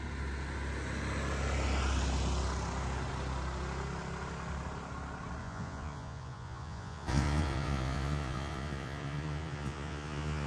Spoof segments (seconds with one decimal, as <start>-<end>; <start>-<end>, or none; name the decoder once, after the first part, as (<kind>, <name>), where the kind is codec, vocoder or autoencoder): 5.4-10.5 (vocoder, Vocos)